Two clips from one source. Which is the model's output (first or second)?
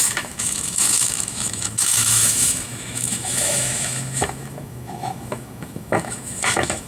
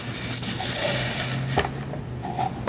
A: first